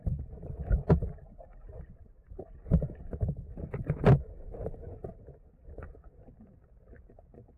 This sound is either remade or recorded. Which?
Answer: recorded